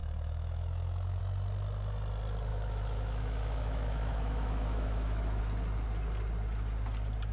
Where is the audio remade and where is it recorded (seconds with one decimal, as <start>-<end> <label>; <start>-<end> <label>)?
0.0-1.2 remade; 1.2-2.5 recorded; 2.5-5.4 remade; 5.4-7.3 recorded